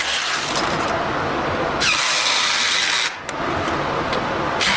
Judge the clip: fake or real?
real